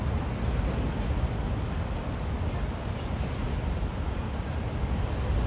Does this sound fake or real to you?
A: real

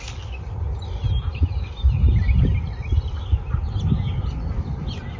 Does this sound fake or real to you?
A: real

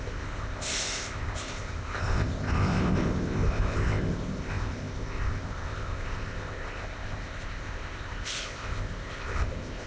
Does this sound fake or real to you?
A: fake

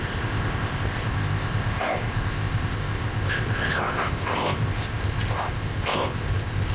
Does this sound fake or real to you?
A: fake